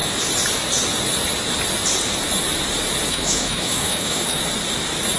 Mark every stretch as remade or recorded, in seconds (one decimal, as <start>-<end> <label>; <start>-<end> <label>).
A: 0.0-3.1 recorded; 3.1-4.4 remade; 4.4-5.2 recorded